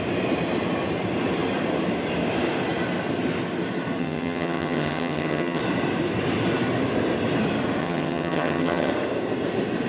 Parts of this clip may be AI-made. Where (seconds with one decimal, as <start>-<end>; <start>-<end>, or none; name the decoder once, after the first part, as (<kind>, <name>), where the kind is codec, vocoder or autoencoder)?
4.0-5.6 (vocoder, HiFi-GAN); 7.8-8.9